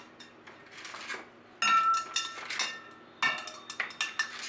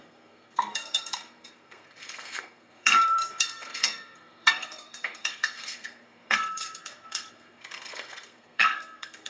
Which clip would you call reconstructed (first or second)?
second